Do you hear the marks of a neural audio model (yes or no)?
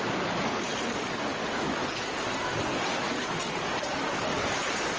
no